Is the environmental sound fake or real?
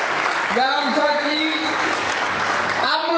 fake